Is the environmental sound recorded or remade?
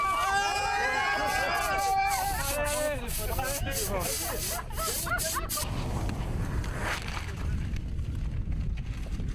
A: recorded